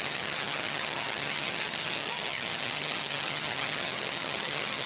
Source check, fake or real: fake